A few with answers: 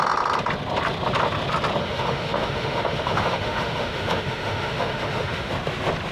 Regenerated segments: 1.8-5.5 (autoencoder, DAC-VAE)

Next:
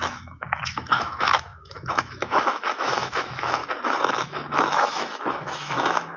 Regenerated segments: 0.0-3.6 (autoencoder, DAC-VAE); 4.1-6.2

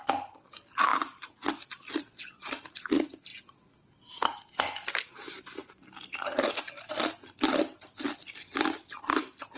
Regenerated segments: none

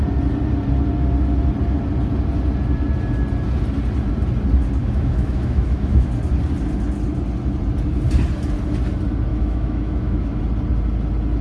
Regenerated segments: 4.8-6.1 (autoencoder, DAC-VAE); 9.3-10.4

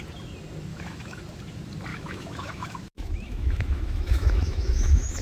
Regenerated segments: 0.7-1.2 (autoencoder, DAC-VAE); 1.9-5.2

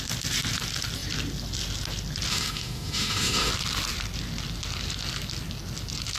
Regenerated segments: 2.3-3.5 (autoencoder, DAC-VAE)